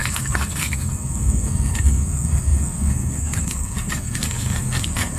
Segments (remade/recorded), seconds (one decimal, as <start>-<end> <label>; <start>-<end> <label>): 0.0-5.2 remade